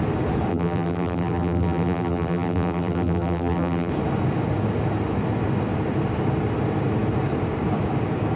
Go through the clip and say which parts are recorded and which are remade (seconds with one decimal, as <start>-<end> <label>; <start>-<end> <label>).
0.0-0.5 recorded; 0.5-3.9 remade; 3.9-8.4 recorded